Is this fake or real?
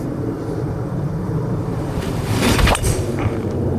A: fake